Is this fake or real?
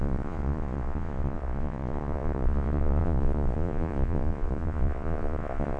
fake